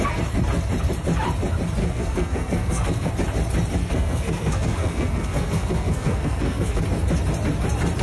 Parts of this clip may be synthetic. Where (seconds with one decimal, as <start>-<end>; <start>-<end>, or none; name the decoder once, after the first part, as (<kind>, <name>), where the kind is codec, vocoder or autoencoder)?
1.8-3.1 (codec, SNAC); 3.8-6.8